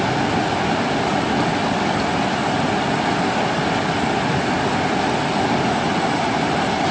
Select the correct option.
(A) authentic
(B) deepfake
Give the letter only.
A